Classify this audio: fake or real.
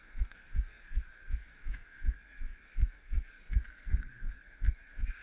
fake